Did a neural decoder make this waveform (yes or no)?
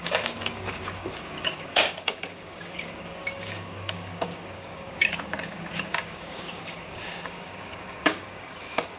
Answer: yes